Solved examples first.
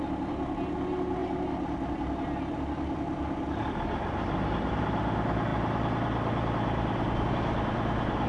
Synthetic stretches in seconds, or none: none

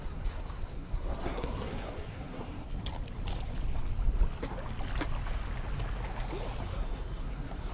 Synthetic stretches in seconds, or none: 0.0-2.9 (codec, SNAC); 6.6-7.7

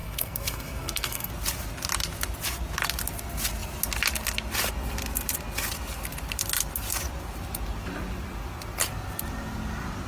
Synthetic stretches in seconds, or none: 0.0-1.3 (codec, SNAC)

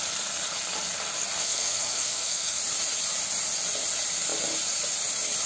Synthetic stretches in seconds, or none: 1.4-2.6 (codec, SNAC)